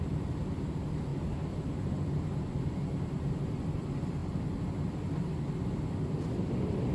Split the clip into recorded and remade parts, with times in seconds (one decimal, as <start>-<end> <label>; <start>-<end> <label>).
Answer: 0.0-1.1 remade; 1.1-2.8 recorded; 2.8-6.9 remade